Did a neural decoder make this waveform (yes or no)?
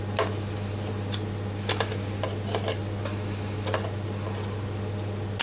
no